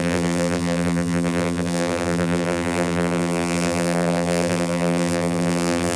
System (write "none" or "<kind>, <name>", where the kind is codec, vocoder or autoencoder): vocoder, BigVGAN v2